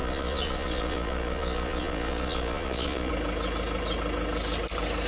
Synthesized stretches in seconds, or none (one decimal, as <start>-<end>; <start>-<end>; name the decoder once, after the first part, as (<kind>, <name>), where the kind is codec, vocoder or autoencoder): 0.0-3.1 (vocoder, Vocos)